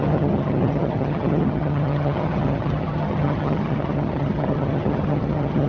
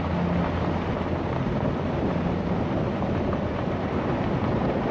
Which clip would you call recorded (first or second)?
second